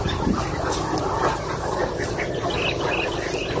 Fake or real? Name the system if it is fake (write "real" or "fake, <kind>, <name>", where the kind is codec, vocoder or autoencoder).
real